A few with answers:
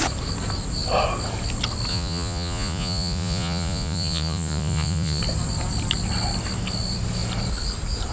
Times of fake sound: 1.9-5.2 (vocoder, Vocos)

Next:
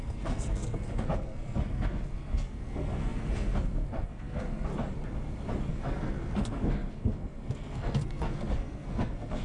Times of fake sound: 0.0-4.7 (codec, SNAC); 5.7-9.4

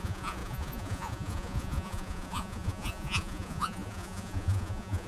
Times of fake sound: 0.0-5.1 (vocoder, Vocos)